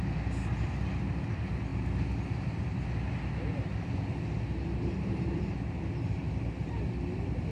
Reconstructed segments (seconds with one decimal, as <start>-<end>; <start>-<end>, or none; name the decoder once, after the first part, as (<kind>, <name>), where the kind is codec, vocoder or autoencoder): none